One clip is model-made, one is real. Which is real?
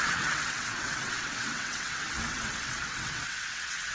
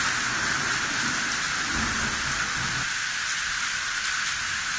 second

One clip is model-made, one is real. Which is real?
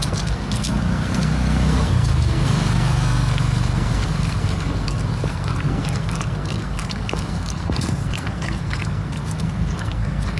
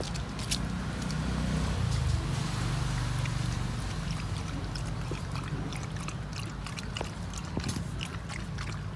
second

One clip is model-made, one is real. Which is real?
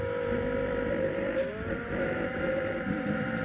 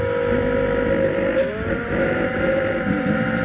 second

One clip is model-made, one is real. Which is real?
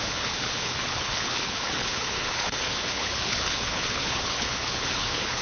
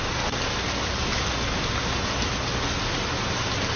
second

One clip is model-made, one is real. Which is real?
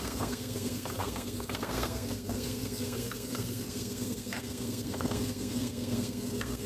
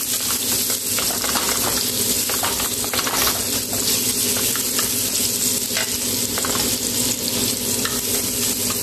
second